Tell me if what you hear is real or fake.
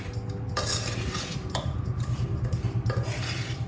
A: real